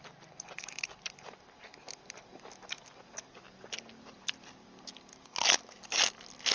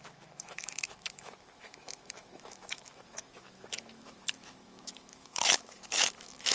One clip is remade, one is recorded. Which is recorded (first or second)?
first